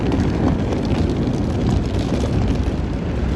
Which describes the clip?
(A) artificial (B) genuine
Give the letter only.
B